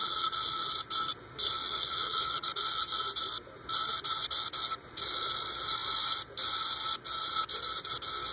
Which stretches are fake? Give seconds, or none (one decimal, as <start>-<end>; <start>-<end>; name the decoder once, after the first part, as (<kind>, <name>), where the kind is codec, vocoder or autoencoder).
0.0-0.6 (vocoder, Vocos); 1.6-3.0